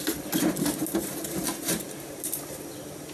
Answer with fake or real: real